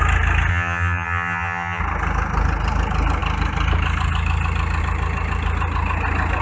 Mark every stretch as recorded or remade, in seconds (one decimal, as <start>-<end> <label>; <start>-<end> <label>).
0.0-0.5 recorded; 0.5-1.8 remade; 1.8-6.4 recorded